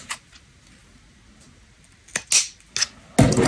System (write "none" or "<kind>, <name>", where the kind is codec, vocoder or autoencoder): none